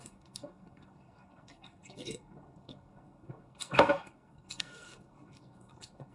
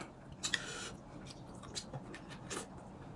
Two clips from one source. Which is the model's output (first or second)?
first